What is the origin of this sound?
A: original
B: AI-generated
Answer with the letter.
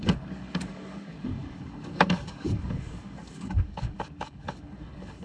B